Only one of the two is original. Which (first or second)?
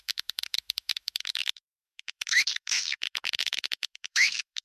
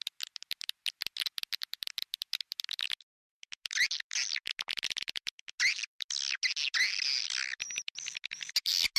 second